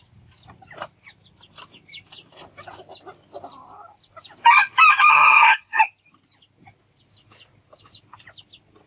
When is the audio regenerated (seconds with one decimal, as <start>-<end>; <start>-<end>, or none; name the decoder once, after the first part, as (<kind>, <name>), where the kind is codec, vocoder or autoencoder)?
5.1-5.8 (codec, SNAC)